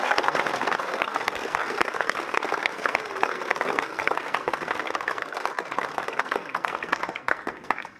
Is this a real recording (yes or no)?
no